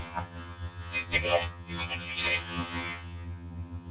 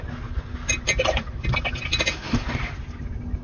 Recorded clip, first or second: second